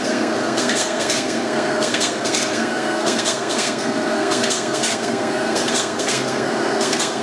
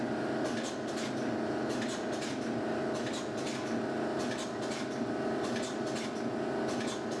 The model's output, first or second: first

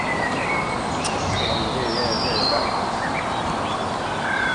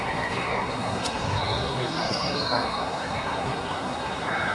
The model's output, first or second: second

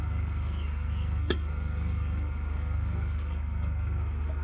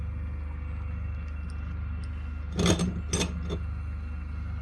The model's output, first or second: first